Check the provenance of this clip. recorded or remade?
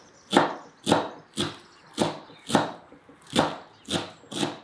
recorded